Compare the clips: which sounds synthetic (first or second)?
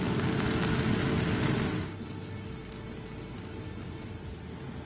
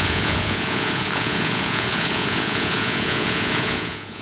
second